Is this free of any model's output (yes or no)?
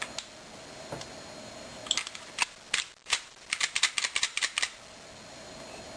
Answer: yes